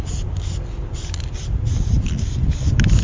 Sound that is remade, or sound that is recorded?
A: recorded